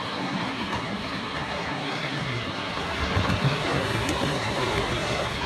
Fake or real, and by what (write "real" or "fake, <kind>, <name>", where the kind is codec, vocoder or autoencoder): fake, codec, SNAC